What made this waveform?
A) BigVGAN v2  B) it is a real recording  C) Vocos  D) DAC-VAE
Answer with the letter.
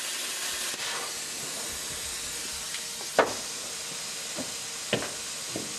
B